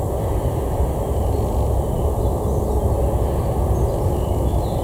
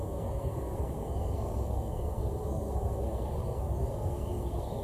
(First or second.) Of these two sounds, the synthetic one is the second